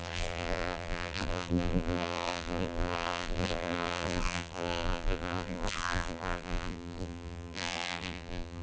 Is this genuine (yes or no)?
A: no